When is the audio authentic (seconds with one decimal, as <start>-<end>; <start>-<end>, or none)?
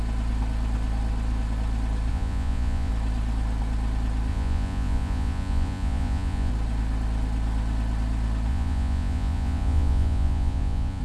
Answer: 0.0-2.1; 2.9-4.3; 6.5-8.5